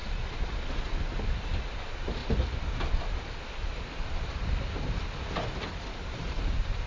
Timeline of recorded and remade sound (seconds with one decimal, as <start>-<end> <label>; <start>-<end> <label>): 0.0-0.6 remade; 0.6-6.9 recorded